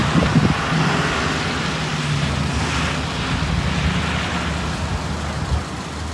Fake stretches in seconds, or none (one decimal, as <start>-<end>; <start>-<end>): 0.0-1.1